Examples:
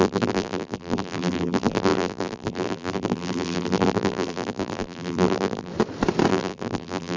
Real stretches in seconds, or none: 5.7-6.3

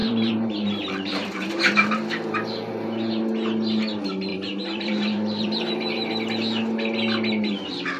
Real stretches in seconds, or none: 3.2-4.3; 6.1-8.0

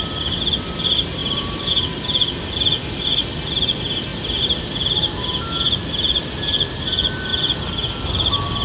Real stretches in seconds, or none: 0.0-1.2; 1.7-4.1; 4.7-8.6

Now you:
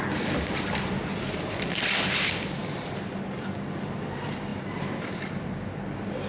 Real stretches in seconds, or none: 0.0-1.0; 2.9-6.3